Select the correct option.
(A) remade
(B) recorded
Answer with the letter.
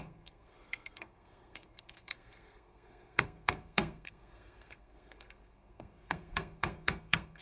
A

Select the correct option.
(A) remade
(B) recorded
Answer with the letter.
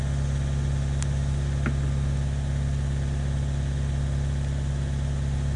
B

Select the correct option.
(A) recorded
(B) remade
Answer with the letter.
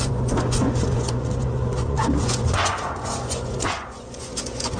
B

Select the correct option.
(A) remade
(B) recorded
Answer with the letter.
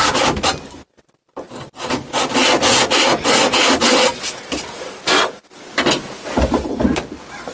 B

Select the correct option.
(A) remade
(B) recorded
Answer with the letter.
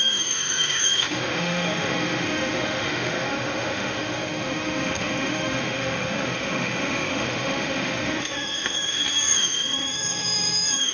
A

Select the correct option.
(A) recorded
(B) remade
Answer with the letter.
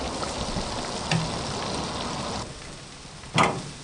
A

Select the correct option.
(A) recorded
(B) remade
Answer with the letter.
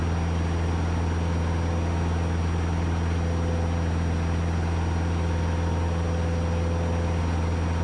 A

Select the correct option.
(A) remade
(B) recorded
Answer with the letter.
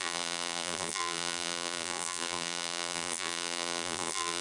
A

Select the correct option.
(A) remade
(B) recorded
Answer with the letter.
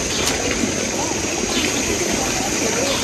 B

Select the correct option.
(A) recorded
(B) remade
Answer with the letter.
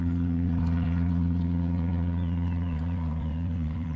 B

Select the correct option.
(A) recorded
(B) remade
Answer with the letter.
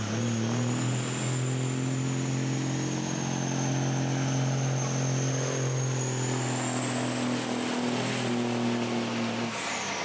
A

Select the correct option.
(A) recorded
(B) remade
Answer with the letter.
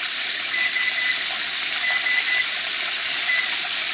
A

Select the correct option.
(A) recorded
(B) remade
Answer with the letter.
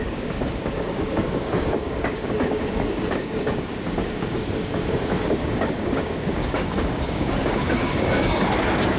B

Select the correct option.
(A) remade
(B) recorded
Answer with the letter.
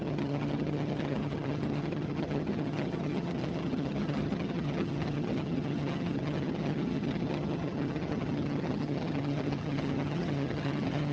A